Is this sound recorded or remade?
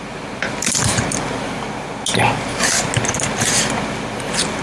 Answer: recorded